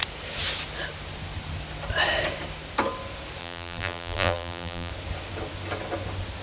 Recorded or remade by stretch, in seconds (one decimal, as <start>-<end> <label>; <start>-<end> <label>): 0.0-3.4 recorded; 3.4-4.9 remade; 4.9-6.4 recorded